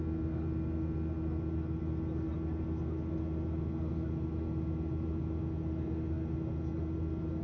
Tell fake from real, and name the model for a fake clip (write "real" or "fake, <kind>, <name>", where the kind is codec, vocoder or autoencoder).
real